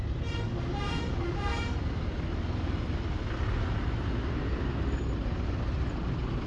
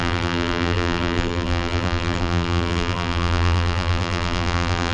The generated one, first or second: second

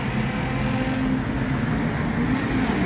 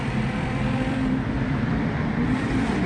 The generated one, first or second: second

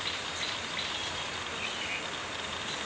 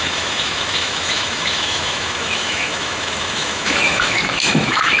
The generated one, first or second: second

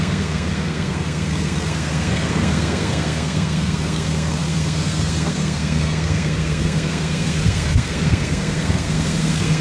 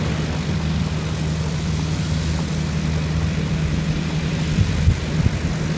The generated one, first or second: first